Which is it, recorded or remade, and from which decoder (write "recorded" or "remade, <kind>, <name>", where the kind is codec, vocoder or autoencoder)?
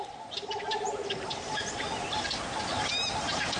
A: recorded